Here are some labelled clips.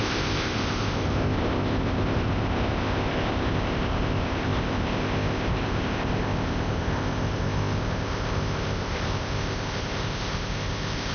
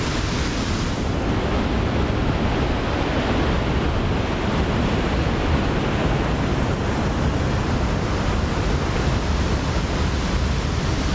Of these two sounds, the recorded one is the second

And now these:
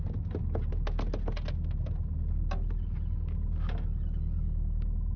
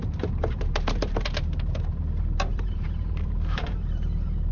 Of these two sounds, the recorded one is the first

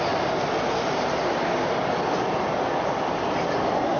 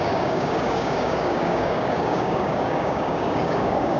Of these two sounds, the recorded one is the first